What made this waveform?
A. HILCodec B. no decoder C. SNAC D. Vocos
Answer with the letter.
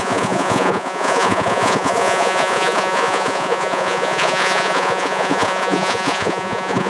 D